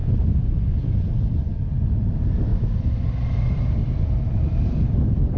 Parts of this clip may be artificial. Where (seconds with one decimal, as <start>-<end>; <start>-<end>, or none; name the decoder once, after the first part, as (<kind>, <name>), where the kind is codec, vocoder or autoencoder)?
0.0-0.5 (vocoder, BigVGAN v2)